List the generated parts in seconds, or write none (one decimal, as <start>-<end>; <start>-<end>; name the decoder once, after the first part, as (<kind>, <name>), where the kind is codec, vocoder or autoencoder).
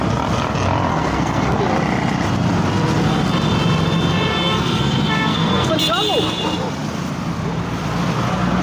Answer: 0.9-1.6 (codec, SNAC); 4.3-5.7